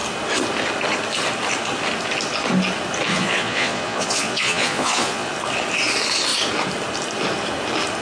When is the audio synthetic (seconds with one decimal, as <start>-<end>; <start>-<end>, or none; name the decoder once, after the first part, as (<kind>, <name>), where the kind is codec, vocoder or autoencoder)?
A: 3.1-5.3 (vocoder, Vocos)